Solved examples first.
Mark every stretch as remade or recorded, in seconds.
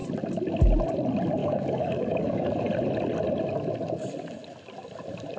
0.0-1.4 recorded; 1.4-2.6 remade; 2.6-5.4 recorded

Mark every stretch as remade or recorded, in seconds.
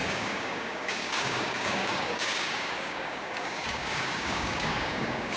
0.0-5.4 remade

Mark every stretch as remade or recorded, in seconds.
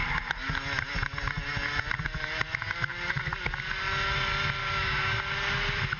0.0-4.6 recorded; 4.6-5.2 remade; 5.2-6.0 recorded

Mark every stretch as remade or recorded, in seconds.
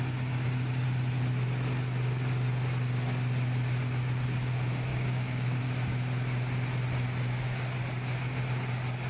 0.0-4.9 recorded; 4.9-5.6 remade; 5.6-9.1 recorded